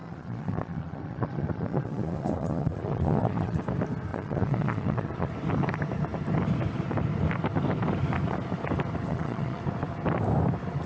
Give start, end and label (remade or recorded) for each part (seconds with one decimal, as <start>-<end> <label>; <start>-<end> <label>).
0.0-3.6 remade; 3.6-4.1 recorded; 4.1-5.3 remade; 5.3-9.1 recorded; 9.1-9.6 remade; 9.6-10.9 recorded